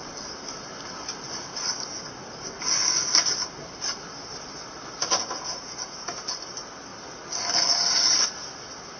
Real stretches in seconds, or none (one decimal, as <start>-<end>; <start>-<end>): 0.0-5.2; 6.1-9.0